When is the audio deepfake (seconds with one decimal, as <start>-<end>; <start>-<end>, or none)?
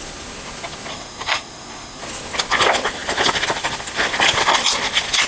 0.9-2.0